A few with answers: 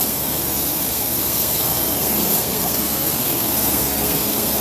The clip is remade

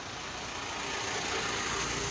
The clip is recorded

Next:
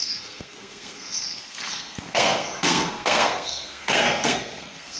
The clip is remade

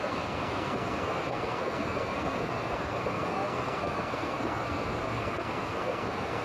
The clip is remade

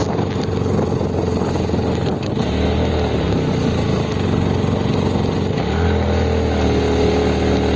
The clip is recorded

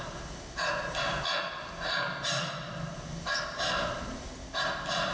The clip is recorded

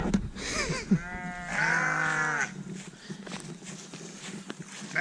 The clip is recorded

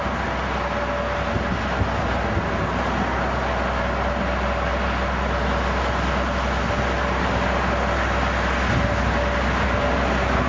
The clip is recorded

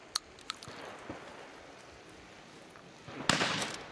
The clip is recorded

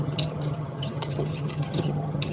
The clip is remade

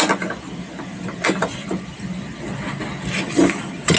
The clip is recorded